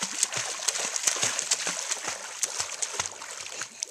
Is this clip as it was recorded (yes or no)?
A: yes